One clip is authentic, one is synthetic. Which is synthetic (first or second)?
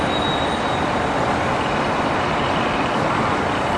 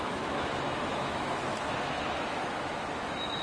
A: second